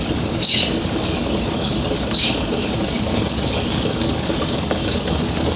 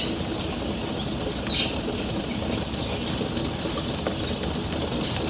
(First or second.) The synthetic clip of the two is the first